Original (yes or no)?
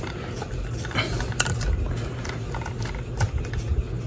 yes